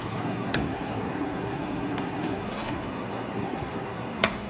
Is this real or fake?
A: fake